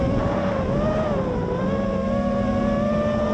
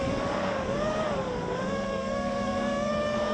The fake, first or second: second